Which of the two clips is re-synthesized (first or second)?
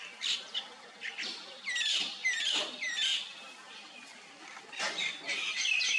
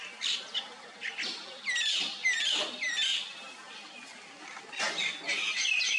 first